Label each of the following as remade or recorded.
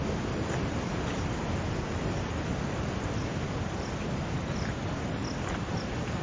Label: recorded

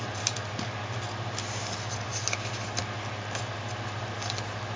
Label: recorded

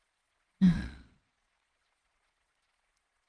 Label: remade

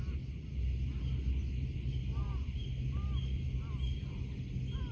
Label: recorded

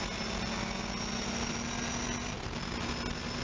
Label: recorded